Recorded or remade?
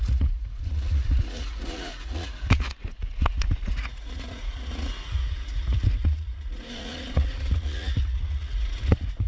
remade